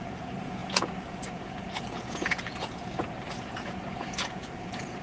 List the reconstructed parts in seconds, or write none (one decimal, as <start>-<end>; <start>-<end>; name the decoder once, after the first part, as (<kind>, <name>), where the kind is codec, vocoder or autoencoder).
0.0-5.0 (vocoder, Vocos)